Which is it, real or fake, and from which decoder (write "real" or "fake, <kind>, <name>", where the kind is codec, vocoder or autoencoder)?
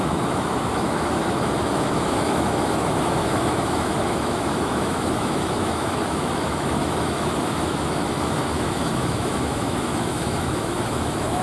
fake, autoencoder, DAC-VAE